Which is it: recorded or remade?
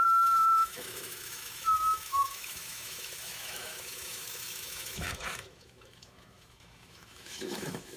remade